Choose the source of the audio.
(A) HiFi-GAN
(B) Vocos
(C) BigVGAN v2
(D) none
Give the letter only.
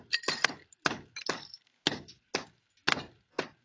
D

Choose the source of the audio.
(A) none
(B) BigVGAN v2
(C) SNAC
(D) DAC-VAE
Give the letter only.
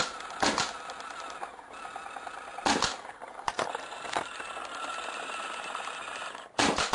A